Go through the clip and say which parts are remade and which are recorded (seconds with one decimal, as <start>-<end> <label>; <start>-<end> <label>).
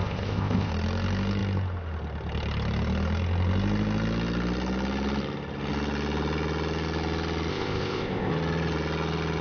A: 0.0-0.7 remade; 0.7-7.5 recorded; 7.5-8.3 remade; 8.3-9.4 recorded